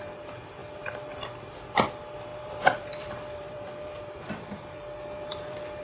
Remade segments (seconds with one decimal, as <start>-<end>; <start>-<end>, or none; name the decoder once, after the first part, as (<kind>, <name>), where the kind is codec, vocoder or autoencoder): 2.3-5.8 (vocoder, BigVGAN v2)